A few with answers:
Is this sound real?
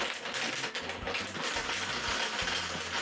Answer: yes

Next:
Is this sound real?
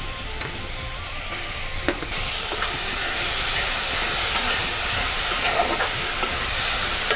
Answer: no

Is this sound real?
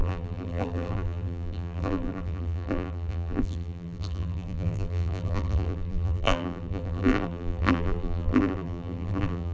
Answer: no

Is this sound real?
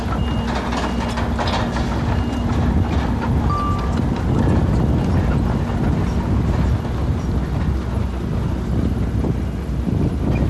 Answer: yes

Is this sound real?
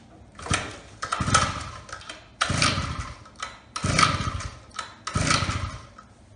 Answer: yes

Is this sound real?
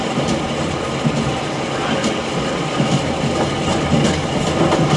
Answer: yes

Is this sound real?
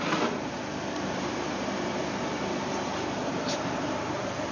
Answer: no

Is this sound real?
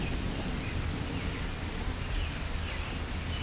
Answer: yes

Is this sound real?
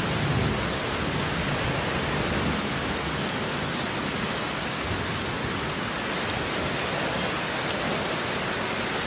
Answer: yes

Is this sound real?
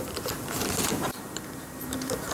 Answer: no